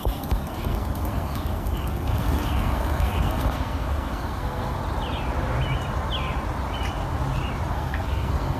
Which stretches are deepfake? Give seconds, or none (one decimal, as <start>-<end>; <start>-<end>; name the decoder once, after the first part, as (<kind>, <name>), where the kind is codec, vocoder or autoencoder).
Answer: 0.0-4.8 (codec, SNAC); 7.7-8.6